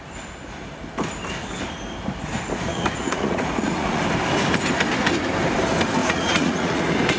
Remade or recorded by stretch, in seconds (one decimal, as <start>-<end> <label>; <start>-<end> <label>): 0.0-2.7 recorded; 2.7-4.0 remade; 4.0-6.0 recorded; 6.0-6.8 remade; 6.8-7.2 recorded